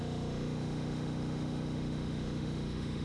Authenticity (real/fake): fake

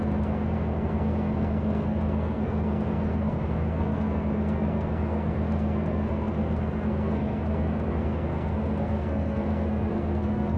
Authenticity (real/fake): fake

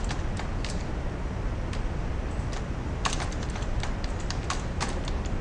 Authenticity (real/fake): real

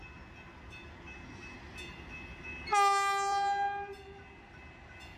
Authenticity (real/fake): real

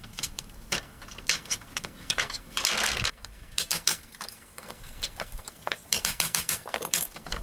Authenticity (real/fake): fake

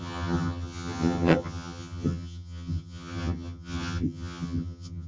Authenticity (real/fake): fake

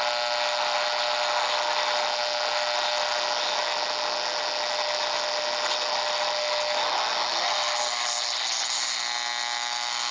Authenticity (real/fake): real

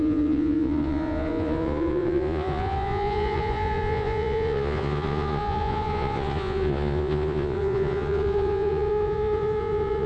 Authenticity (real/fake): fake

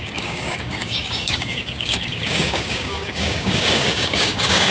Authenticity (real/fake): fake